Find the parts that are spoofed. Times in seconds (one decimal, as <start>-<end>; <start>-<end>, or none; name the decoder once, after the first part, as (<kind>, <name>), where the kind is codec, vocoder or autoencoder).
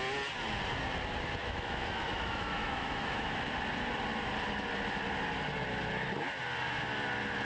1.4-3.5 (autoencoder, DAC-VAE)